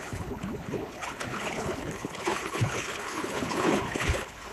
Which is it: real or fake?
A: fake